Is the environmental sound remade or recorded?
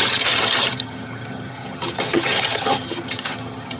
remade